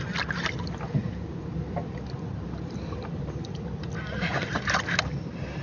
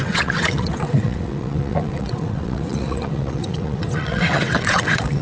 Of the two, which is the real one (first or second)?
first